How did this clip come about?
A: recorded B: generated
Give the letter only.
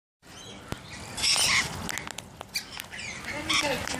A